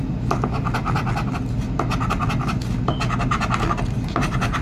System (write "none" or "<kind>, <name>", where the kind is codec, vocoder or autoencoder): none